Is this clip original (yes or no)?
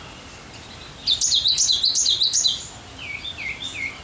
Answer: yes